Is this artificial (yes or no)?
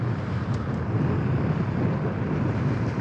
yes